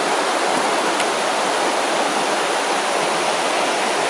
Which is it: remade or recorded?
recorded